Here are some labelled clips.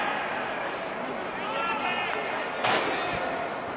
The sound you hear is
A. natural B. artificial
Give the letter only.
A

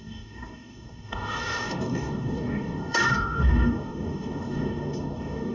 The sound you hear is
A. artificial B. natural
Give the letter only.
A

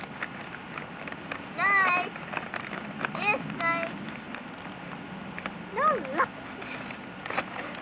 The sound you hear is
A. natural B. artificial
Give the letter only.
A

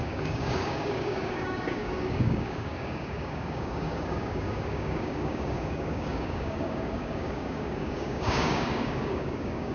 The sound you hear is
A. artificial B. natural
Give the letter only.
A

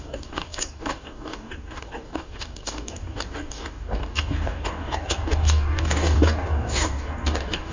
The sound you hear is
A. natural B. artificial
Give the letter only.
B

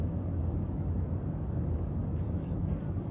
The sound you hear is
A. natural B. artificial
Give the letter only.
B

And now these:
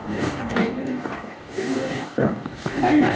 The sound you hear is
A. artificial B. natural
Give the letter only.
A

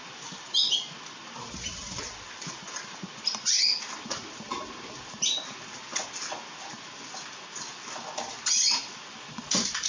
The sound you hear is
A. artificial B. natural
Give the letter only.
B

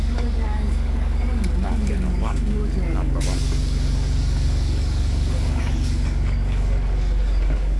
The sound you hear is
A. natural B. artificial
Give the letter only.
B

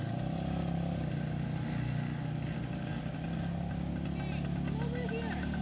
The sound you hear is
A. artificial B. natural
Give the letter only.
B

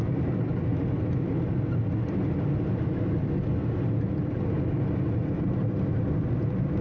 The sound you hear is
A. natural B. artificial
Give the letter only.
A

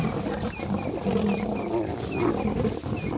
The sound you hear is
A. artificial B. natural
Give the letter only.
B